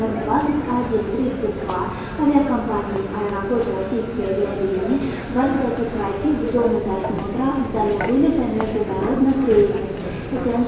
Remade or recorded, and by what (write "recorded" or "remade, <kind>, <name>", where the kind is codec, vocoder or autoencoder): recorded